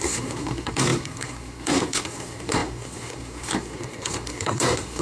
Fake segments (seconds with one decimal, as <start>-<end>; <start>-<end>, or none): 0.0-5.0